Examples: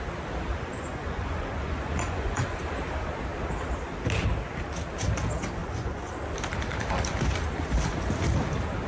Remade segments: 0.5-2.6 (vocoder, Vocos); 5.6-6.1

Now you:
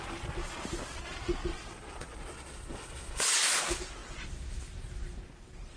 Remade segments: 1.5-3.6 (vocoder, Vocos)

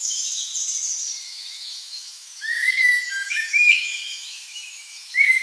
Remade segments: 0.0-0.5 (autoencoder, DAC-VAE); 1.2-5.4